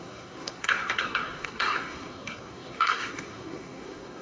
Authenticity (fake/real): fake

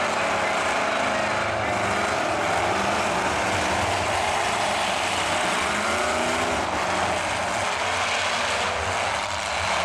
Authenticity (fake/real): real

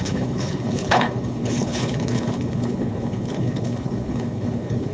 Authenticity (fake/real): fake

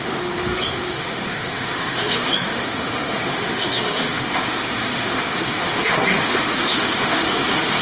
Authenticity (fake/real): fake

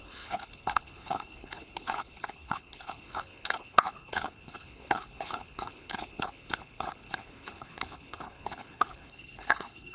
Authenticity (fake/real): fake